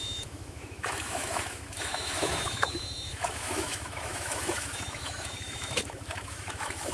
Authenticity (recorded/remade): remade